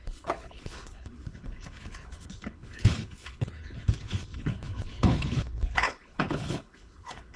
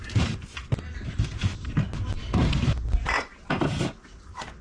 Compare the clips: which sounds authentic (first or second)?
second